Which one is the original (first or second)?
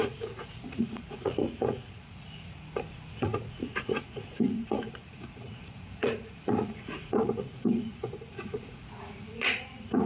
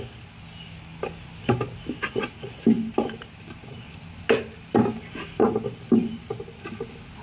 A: second